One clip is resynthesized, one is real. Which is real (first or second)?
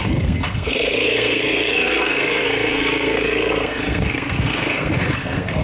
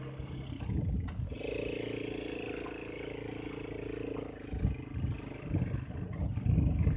second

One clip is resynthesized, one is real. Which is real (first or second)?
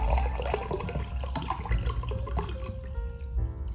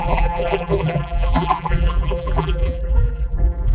first